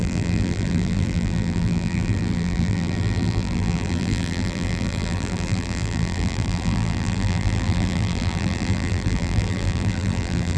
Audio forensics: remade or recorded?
remade